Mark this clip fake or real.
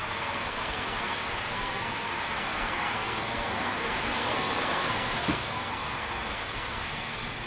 fake